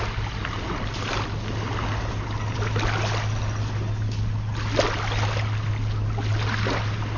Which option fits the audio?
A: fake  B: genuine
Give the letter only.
B